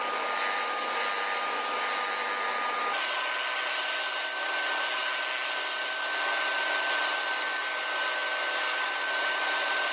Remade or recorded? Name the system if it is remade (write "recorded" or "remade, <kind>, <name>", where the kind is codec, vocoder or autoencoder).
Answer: recorded